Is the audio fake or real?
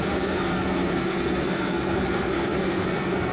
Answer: fake